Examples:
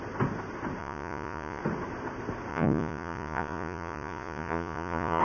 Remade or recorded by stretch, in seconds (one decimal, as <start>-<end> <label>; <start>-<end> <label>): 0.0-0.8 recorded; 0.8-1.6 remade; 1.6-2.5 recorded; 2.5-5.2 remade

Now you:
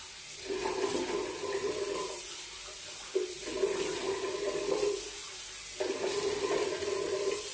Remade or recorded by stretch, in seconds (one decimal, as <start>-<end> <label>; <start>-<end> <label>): 0.0-7.5 recorded

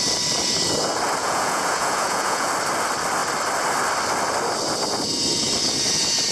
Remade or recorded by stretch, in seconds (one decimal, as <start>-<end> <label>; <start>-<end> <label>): 0.0-1.2 recorded; 1.2-2.5 remade; 2.5-6.3 recorded

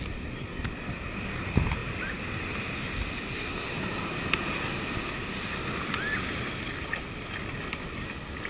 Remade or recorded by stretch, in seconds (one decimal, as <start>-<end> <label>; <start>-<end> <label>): 0.0-8.5 recorded